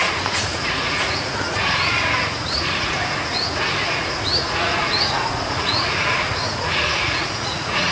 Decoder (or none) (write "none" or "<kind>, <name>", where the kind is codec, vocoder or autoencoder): vocoder, Vocos